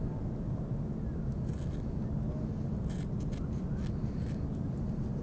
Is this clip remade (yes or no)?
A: no